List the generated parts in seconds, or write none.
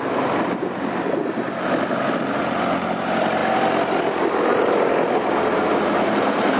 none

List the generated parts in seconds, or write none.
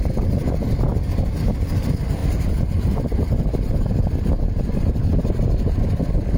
2.2-3.8 (vocoder, BigVGAN v2)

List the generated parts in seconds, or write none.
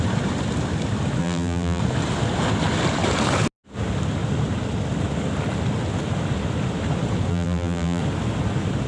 1.2-1.8 (vocoder, BigVGAN v2); 7.3-8.0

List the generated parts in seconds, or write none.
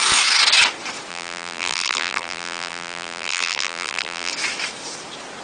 1.1-4.3 (vocoder, BigVGAN v2)